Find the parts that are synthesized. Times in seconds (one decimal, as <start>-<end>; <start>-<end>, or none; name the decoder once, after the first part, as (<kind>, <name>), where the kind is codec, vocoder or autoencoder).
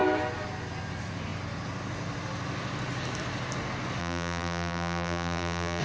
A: 4.0-5.8 (vocoder, BigVGAN v2)